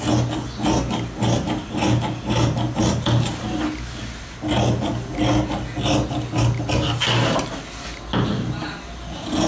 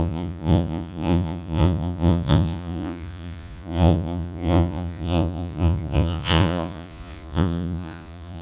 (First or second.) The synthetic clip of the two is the second